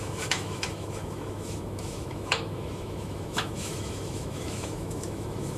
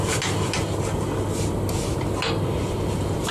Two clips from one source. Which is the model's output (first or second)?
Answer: first